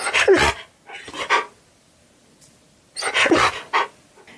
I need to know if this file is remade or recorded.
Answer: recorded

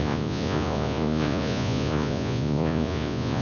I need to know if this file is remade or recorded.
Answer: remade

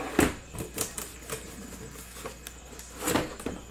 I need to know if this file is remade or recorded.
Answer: recorded